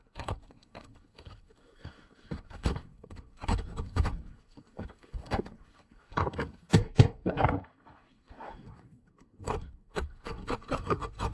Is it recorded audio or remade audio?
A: remade